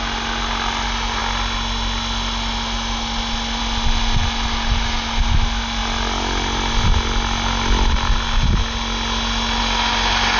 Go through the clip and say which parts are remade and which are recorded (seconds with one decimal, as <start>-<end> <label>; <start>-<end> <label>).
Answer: 0.0-10.4 recorded

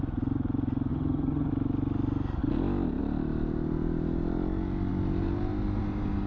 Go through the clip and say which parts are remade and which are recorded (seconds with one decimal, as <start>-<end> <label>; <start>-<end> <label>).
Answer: 0.0-0.9 recorded; 0.9-1.5 remade; 1.5-6.3 recorded

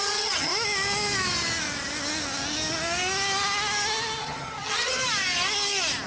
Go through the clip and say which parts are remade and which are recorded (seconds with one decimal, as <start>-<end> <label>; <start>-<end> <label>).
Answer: 0.0-0.5 remade; 0.5-4.2 recorded; 4.2-5.0 remade; 5.0-6.1 recorded

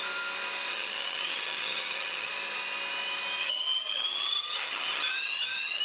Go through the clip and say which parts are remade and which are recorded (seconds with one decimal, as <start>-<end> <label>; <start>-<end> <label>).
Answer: 0.0-0.7 recorded; 0.7-2.3 remade; 2.3-3.4 recorded; 3.4-5.8 remade